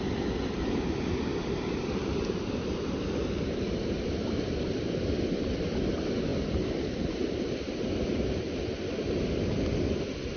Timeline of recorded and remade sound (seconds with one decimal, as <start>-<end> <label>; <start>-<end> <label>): 0.0-1.3 recorded; 1.3-5.4 remade; 5.4-6.3 recorded; 6.3-8.5 remade; 8.5-10.4 recorded